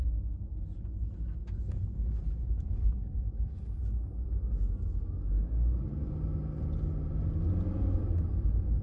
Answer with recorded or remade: recorded